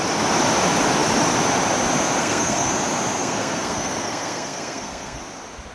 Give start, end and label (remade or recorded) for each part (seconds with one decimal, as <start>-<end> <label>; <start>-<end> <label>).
0.0-2.2 recorded; 2.2-2.7 remade; 2.7-3.2 recorded; 3.2-5.2 remade; 5.2-5.7 recorded